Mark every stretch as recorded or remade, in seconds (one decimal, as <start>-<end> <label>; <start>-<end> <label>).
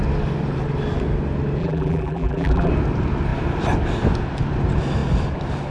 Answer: 0.0-1.6 recorded; 1.6-2.7 remade; 2.7-5.7 recorded